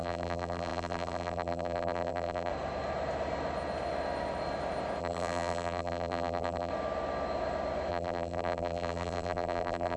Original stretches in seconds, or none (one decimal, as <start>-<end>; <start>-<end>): 2.5-5.0; 6.7-7.9